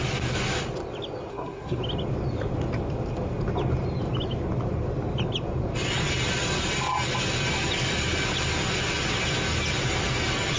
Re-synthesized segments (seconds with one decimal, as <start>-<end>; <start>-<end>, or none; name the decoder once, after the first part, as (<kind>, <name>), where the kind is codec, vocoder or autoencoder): 1.3-1.8 (codec, SNAC)